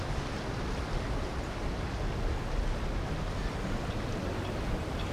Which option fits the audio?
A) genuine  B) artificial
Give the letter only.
A